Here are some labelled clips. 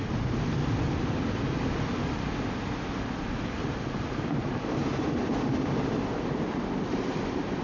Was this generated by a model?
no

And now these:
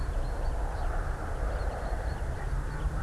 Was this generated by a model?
no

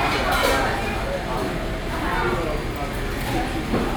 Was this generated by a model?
no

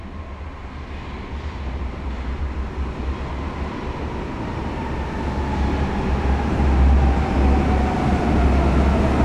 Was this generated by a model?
no